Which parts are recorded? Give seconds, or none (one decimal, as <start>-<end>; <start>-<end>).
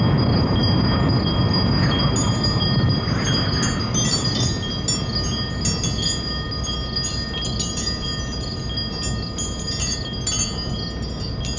0.0-11.6